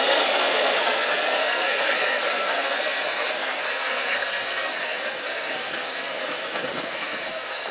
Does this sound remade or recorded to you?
remade